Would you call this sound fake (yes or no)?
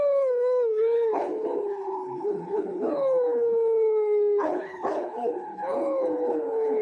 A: yes